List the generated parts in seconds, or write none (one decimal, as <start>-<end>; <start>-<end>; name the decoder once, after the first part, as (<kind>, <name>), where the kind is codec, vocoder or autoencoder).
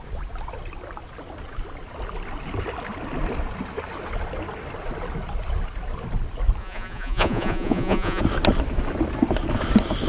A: 6.6-8.2 (vocoder, Vocos)